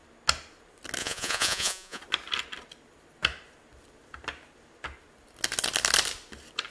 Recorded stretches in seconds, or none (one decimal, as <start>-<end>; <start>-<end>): 0.0-1.0; 2.0-6.7

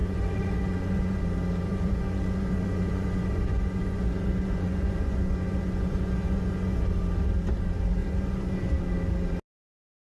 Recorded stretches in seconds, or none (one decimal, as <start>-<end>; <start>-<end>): 1.2-1.7; 6.9-8.0; 8.8-10.2